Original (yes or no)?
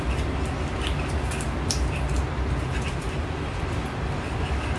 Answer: yes